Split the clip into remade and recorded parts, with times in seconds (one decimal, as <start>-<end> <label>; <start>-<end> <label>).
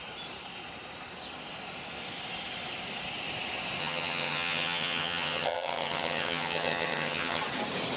0.0-3.8 recorded; 3.8-7.4 remade; 7.4-8.0 recorded